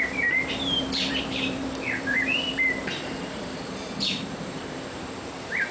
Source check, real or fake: fake